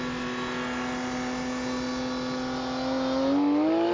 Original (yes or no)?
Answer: yes